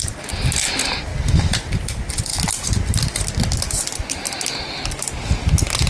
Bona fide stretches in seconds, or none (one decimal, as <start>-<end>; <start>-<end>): 0.0-5.9